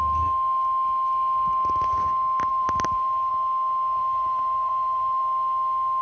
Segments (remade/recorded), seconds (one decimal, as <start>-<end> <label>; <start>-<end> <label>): 0.0-2.5 recorded; 2.5-3.3 remade; 3.3-4.0 recorded; 4.0-5.2 remade; 5.2-6.0 recorded